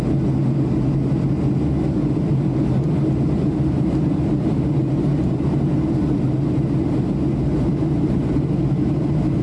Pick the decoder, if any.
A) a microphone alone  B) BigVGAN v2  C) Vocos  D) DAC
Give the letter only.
A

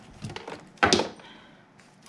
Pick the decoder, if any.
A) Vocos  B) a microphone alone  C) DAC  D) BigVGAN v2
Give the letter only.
B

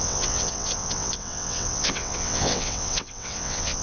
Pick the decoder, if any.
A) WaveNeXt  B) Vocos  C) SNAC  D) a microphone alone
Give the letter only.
A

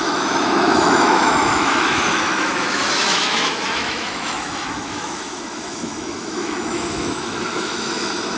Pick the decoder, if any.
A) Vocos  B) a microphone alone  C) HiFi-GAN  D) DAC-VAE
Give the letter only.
D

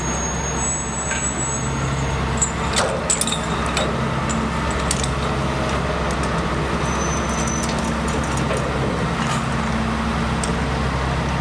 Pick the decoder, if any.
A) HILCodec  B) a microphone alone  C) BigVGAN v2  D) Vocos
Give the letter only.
B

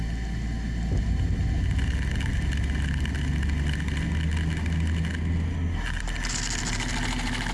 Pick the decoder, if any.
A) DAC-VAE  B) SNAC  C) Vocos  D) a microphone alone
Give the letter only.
D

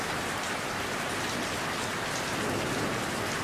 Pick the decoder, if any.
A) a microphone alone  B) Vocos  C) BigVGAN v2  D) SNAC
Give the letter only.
A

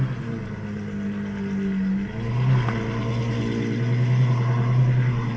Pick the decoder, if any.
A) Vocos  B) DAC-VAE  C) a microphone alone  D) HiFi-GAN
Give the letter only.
C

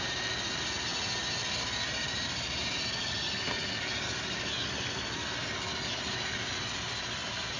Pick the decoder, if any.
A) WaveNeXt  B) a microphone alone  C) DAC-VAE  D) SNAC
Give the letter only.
B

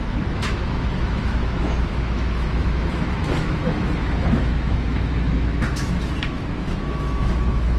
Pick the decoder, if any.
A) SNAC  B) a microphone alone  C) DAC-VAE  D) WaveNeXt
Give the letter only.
C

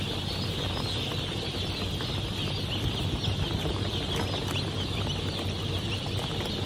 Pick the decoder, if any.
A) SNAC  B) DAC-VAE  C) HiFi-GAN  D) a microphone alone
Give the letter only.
D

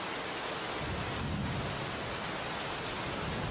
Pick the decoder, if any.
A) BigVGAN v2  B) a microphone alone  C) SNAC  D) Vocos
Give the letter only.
B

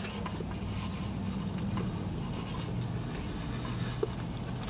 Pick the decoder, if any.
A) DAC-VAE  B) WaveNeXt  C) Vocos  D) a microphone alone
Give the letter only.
D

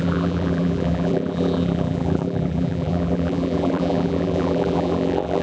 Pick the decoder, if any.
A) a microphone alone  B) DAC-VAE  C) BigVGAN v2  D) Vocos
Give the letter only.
C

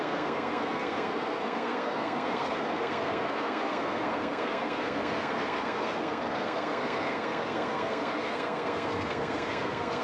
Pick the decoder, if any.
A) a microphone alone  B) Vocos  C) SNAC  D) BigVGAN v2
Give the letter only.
C